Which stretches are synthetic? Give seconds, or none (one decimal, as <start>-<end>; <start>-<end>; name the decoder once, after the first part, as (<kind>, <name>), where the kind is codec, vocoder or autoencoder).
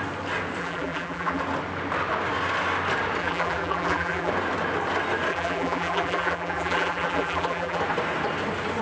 0.6-1.4 (vocoder, BigVGAN v2); 3.2-4.3; 5.3-7.8